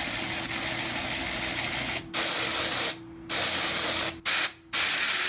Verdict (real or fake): real